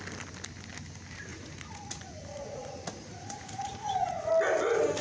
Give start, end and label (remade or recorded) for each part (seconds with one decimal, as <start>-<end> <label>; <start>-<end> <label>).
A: 0.0-1.3 recorded; 1.3-4.3 remade; 4.3-5.0 recorded